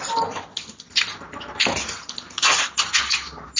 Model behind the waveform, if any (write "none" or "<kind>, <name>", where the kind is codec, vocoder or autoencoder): none